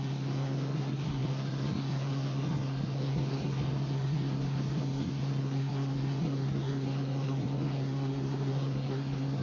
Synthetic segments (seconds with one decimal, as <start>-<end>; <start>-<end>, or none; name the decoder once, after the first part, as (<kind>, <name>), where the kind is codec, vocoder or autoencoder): 0.0-9.4 (codec, SNAC)